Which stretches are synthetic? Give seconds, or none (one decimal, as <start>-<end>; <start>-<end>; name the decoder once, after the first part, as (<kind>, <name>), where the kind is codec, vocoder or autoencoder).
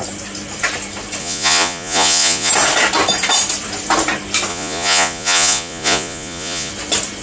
1.2-2.5 (vocoder, Vocos); 4.5-6.7